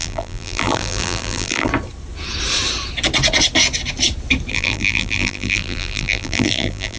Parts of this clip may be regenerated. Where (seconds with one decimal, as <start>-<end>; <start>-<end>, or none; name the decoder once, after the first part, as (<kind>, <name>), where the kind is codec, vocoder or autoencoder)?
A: 0.0-1.7 (vocoder, BigVGAN v2); 4.5-7.0